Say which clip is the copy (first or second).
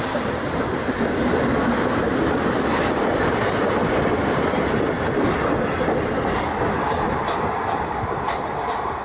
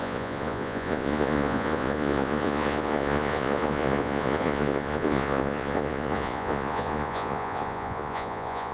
second